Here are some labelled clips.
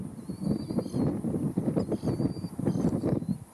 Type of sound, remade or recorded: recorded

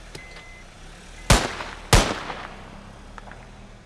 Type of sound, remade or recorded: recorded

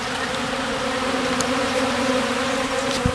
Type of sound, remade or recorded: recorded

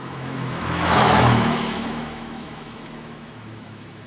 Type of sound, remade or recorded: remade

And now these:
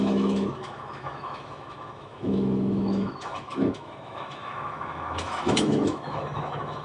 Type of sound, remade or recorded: remade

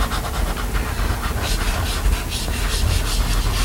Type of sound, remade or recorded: recorded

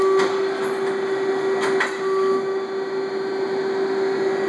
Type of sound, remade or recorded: recorded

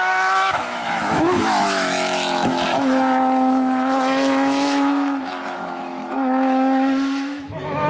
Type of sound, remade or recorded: remade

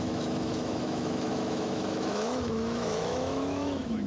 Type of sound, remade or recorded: remade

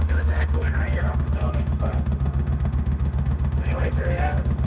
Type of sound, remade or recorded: remade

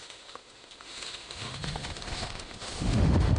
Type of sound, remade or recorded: remade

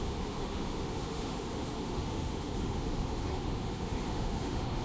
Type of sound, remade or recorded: remade